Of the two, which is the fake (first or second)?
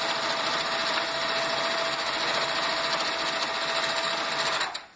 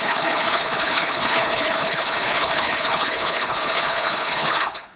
second